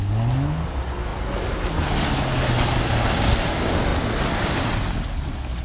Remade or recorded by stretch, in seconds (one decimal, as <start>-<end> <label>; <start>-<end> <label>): 0.0-5.6 recorded